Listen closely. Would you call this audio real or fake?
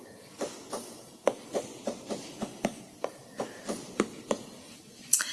real